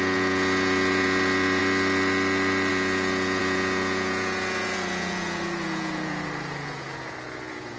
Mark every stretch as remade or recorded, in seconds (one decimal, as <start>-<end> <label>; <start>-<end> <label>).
0.0-1.6 remade; 1.6-2.7 recorded; 2.7-7.8 remade